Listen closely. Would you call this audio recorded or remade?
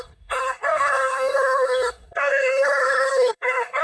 remade